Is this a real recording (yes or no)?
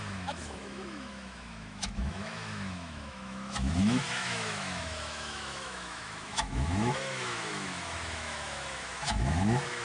no